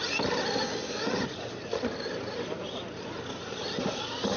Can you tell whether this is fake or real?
real